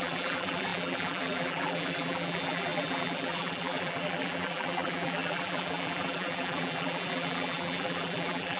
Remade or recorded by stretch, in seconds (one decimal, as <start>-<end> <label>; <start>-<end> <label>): 0.0-8.6 remade

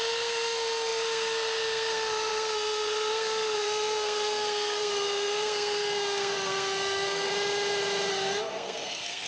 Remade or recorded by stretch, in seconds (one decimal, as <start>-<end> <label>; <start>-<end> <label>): 0.0-7.3 remade; 7.3-8.1 recorded; 8.1-9.3 remade

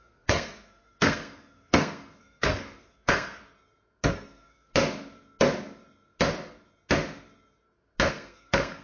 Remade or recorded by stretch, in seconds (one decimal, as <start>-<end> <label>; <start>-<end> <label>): 0.0-3.4 remade; 3.4-4.1 recorded; 4.1-4.7 remade; 4.7-8.1 recorded; 8.1-8.8 remade

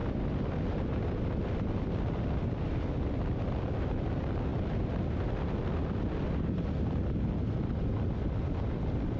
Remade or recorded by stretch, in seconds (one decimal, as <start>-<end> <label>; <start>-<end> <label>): 0.0-9.2 recorded